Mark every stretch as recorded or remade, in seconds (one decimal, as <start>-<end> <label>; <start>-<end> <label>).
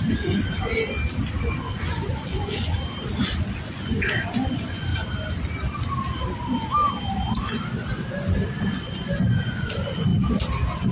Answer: 0.0-0.7 remade; 0.7-1.4 recorded; 1.4-2.7 remade; 2.7-3.7 recorded; 3.7-4.9 remade; 4.9-8.7 recorded; 8.7-10.1 remade; 10.1-10.9 recorded